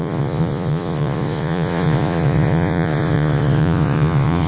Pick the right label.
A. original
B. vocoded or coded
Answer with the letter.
B